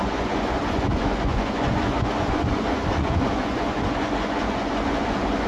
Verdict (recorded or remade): remade